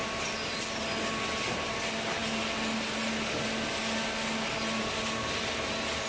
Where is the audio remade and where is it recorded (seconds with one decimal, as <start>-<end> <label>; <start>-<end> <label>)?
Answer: 0.0-6.1 recorded